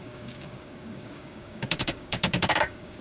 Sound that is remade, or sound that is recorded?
remade